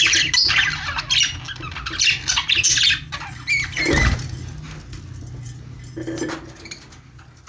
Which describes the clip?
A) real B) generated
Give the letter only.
A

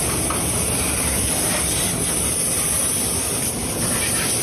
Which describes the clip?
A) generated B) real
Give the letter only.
A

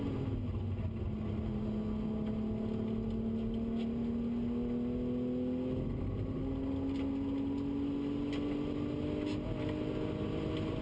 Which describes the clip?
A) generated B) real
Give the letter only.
B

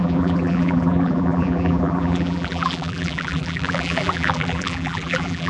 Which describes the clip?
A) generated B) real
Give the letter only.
A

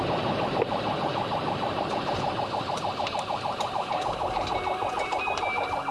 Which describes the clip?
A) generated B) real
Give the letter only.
A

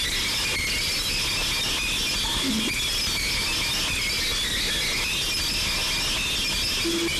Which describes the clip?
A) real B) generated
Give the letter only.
A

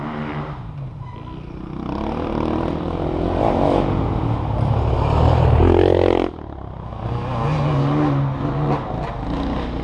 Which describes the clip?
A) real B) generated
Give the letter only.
A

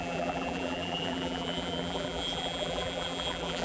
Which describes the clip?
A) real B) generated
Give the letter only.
B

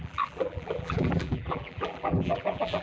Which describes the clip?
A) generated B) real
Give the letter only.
A